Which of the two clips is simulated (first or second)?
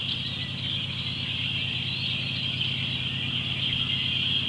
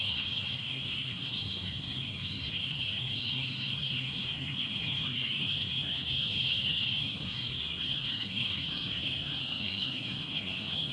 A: second